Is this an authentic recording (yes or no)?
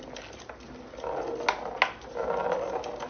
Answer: yes